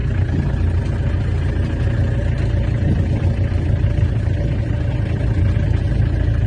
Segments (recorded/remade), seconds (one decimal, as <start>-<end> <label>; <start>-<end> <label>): 0.0-6.5 recorded